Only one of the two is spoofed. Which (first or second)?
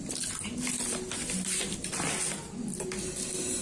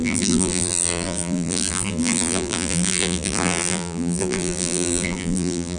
second